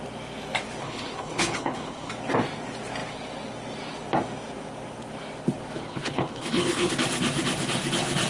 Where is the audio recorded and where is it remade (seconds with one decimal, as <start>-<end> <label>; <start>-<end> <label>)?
0.0-0.8 recorded; 0.8-2.1 remade; 2.1-5.8 recorded; 5.8-6.9 remade; 6.9-8.3 recorded

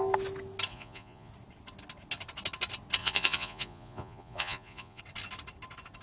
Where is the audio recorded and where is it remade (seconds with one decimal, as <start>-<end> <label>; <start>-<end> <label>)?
0.0-0.7 recorded; 0.7-1.3 remade; 1.3-3.0 recorded; 3.0-5.0 remade; 5.0-6.0 recorded

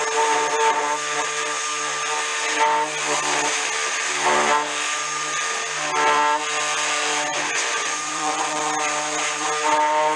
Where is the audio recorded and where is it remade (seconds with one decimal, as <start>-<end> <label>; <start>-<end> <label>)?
0.0-7.3 recorded; 7.3-8.6 remade; 8.6-10.2 recorded